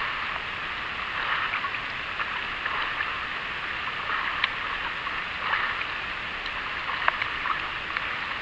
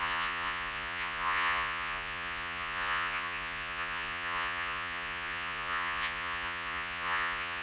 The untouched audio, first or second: first